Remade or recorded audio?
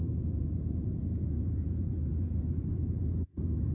remade